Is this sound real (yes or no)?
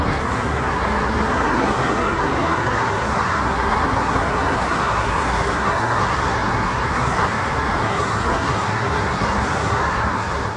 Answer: no